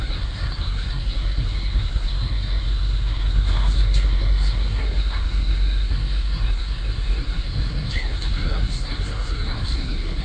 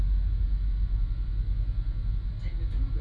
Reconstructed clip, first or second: first